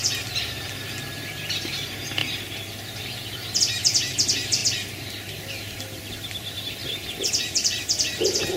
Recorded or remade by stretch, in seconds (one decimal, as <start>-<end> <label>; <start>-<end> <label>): 0.0-2.2 remade; 2.2-3.6 recorded; 3.6-4.6 remade; 4.6-5.4 recorded; 5.4-8.6 remade